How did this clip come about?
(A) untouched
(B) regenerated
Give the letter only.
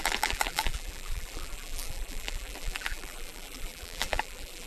B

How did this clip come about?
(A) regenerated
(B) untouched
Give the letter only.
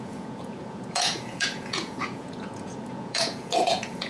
A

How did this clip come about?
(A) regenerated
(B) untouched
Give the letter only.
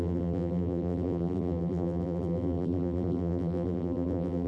A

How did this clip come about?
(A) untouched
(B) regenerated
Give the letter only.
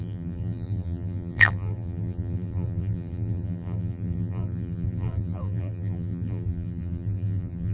B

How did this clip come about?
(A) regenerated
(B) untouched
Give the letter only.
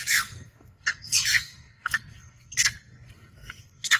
A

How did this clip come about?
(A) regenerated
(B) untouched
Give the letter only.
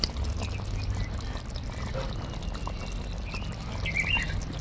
B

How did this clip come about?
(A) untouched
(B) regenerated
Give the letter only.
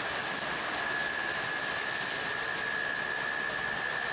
A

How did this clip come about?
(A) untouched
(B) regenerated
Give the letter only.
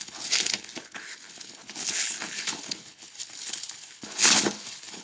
B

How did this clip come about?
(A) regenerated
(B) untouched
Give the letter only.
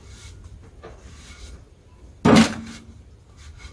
B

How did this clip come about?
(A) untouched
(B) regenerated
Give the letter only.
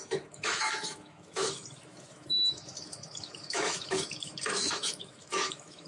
B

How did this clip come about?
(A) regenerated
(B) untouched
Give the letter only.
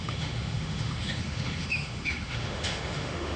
A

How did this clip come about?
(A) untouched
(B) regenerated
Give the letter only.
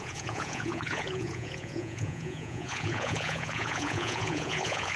B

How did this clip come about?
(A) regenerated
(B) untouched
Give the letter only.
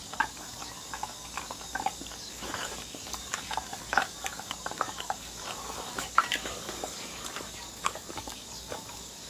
A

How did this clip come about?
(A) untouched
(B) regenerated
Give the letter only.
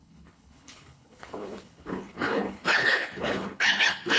B